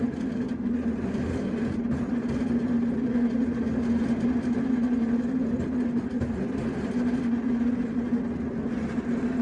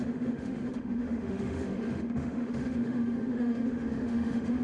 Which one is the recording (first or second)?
first